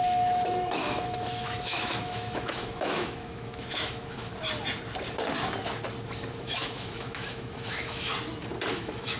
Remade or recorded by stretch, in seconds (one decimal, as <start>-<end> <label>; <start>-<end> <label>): 0.0-4.3 remade; 4.3-6.4 recorded; 6.4-8.1 remade; 8.1-8.7 recorded; 8.7-9.2 remade